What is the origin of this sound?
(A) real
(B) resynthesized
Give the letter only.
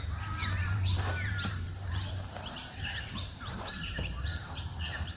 B